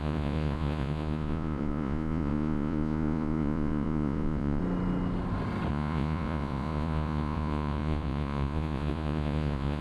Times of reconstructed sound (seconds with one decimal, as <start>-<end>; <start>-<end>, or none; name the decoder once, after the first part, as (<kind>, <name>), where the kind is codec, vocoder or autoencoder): 0.0-4.6 (vocoder, Vocos); 5.7-9.8